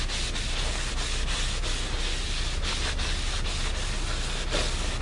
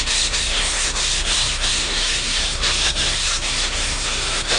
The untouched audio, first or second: first